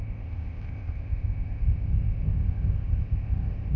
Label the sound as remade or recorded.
remade